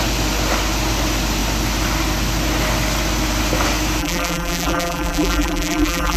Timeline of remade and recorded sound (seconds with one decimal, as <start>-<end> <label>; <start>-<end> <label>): 0.0-4.0 recorded; 4.0-6.2 remade